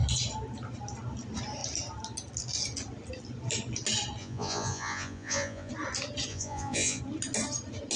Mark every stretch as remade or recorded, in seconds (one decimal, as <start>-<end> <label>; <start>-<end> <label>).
0.0-4.2 recorded; 4.2-5.7 remade; 5.7-6.3 recorded; 6.3-7.0 remade; 7.0-8.0 recorded